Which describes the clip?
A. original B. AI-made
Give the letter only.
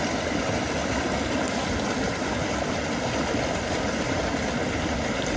A